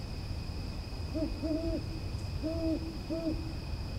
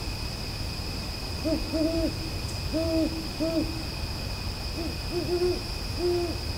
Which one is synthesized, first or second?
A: first